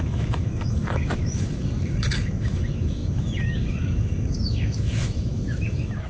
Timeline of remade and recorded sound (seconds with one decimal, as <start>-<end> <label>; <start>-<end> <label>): 0.0-6.1 remade